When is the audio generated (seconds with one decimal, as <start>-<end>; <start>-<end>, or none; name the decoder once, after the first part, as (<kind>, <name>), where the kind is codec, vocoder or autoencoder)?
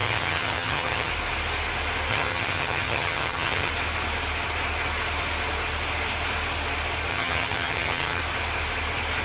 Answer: 0.0-1.1 (vocoder, HiFi-GAN); 2.1-3.7; 7.1-8.2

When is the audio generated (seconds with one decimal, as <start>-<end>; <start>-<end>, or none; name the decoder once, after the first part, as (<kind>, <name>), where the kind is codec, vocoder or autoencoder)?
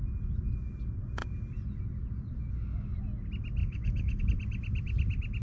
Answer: 3.6-4.2 (autoencoder, DAC-VAE)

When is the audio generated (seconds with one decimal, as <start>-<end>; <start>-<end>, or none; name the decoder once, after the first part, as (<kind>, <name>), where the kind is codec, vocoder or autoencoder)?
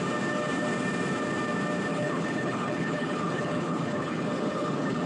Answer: 1.9-5.1 (codec, HILCodec)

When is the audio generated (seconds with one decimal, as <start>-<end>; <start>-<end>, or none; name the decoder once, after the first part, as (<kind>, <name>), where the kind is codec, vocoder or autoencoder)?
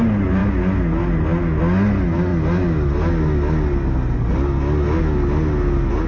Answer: none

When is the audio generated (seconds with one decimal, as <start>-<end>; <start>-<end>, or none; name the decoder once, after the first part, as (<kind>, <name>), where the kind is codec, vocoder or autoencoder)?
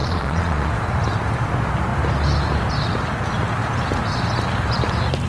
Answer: 0.0-0.7 (vocoder, Vocos)